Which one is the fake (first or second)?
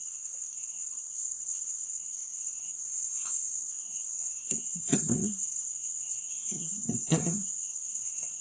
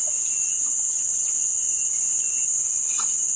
first